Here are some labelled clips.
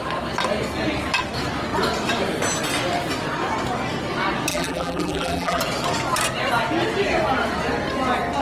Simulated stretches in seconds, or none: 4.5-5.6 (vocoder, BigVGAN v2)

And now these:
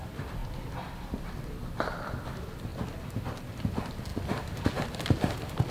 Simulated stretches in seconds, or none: 0.4-1.9 (vocoder, BigVGAN v2); 2.7-3.2

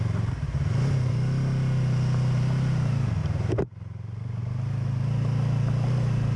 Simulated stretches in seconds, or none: 3.2-4.4 (vocoder, BigVGAN v2)

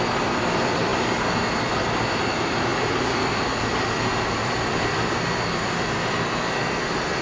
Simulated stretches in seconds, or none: 0.0-7.2 (vocoder, BigVGAN v2)

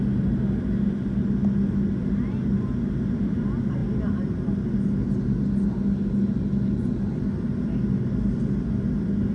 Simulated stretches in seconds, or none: none